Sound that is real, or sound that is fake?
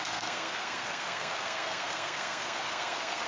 fake